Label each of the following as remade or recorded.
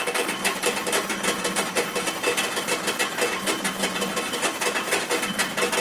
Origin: recorded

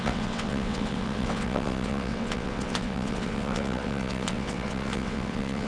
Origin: remade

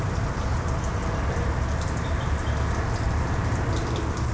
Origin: recorded